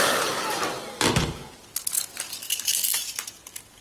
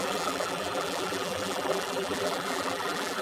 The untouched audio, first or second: first